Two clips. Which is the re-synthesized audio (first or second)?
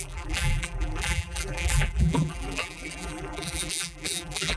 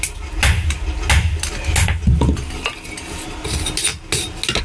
first